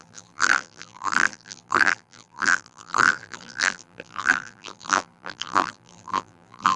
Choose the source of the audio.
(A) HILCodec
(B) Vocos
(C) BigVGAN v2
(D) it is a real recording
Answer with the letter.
C